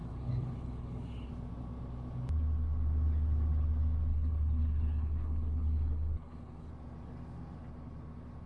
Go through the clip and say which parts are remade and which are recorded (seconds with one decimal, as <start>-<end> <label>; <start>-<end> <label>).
0.0-1.3 remade; 1.3-4.1 recorded; 4.1-6.7 remade; 6.7-8.5 recorded